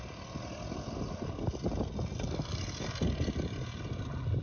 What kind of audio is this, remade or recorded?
recorded